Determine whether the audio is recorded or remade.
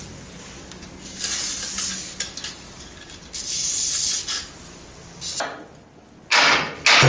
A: recorded